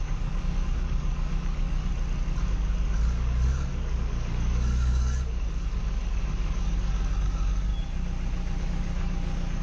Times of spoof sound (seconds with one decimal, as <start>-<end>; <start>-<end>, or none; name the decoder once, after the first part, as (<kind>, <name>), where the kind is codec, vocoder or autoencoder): 0.0-1.9 (codec, DAC); 2.4-7.7; 8.6-9.6